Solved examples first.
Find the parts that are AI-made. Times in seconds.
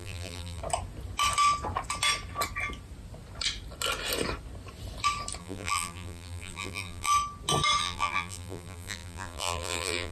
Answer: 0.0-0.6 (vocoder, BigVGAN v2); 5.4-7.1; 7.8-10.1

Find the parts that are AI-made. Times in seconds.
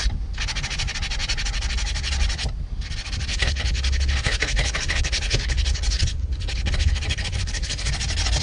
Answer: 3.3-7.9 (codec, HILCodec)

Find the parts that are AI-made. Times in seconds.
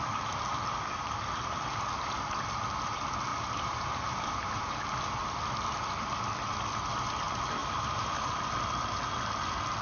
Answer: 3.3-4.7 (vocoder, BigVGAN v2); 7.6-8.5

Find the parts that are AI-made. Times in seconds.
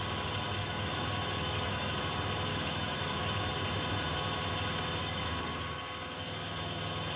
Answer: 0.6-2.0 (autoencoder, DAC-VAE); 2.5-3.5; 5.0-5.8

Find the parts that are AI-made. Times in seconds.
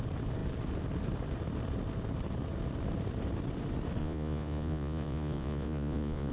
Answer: 4.0-6.3 (vocoder, Vocos)